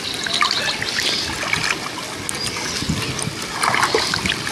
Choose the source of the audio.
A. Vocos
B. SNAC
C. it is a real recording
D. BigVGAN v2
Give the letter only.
C